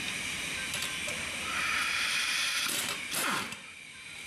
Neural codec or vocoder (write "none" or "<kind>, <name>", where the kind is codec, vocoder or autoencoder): vocoder, BigVGAN v2